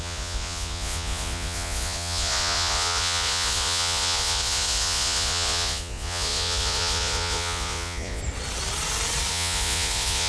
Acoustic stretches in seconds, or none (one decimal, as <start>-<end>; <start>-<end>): 8.2-9.3